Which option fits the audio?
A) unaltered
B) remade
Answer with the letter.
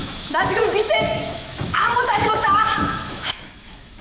B